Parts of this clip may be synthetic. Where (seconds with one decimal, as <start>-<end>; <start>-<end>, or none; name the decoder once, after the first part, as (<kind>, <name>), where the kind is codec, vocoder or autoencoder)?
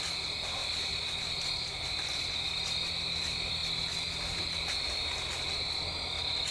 none